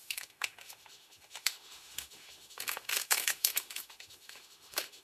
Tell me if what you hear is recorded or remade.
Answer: remade